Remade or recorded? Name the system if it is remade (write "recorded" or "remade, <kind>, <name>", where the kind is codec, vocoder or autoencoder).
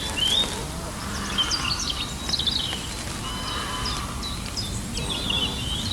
recorded